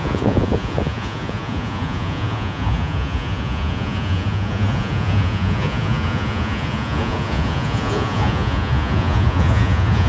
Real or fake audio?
fake